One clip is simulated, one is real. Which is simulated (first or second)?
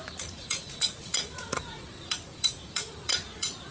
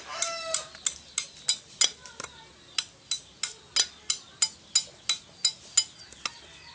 first